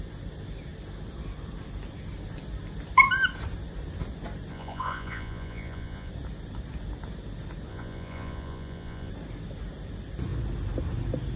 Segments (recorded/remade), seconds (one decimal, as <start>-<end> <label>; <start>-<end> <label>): 0.0-4.5 recorded; 4.5-6.1 remade; 6.1-7.7 recorded; 7.7-9.1 remade; 9.1-11.4 recorded